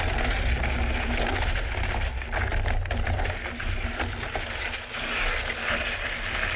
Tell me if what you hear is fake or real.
real